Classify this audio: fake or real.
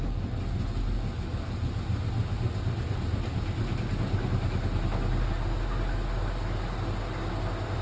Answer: real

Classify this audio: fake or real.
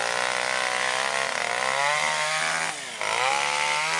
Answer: real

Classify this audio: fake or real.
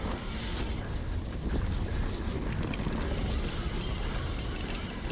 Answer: real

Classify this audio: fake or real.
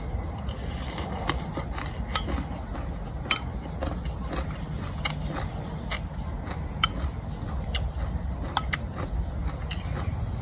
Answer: real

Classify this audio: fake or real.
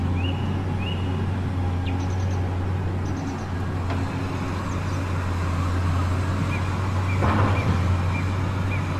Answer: real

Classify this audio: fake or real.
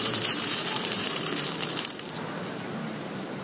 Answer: fake